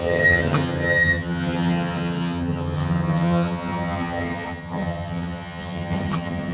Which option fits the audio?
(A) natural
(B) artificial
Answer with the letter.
B